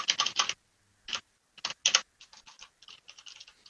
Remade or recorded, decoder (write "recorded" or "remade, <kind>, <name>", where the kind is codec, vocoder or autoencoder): recorded